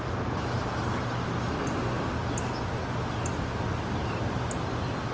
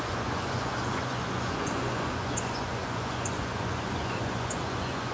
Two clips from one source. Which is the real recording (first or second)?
first